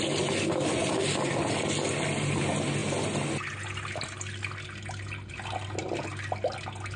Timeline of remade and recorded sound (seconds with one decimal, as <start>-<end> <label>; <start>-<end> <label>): 0.0-7.0 recorded